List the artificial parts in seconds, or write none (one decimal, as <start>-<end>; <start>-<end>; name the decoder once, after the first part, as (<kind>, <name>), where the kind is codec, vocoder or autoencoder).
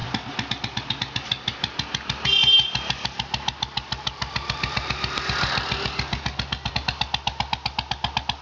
none